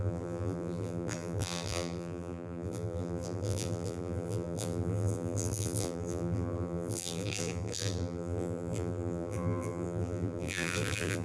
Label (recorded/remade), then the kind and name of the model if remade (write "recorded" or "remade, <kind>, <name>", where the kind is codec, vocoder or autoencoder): remade, vocoder, BigVGAN v2